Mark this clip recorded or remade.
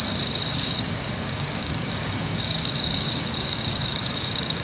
remade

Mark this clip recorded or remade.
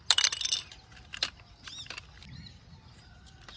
recorded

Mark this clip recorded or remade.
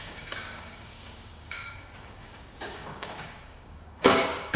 remade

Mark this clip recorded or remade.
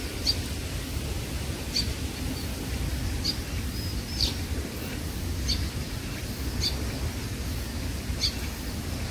recorded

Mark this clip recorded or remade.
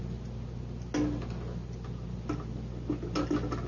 recorded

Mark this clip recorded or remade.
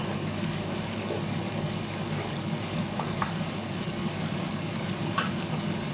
remade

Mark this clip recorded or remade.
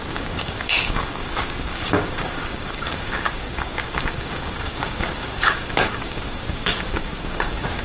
remade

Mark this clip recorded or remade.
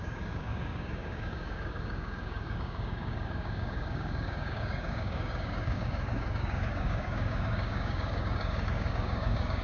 remade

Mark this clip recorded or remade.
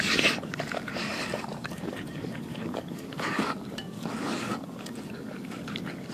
remade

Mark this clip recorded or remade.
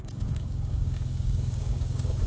remade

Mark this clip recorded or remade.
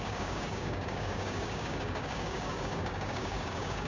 remade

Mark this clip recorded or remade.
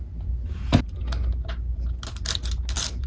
recorded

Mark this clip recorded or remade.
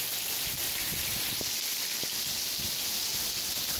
recorded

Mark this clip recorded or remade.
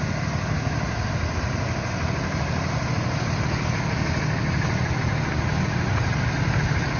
recorded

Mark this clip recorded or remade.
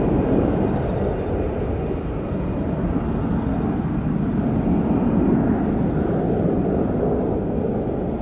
recorded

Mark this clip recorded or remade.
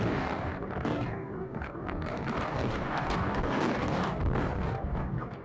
remade